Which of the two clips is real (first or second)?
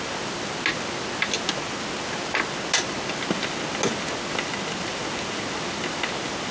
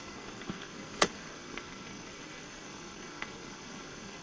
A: first